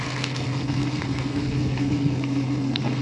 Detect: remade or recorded remade